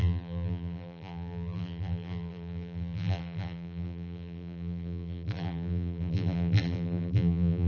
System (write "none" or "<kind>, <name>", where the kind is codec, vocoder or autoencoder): vocoder, BigVGAN v2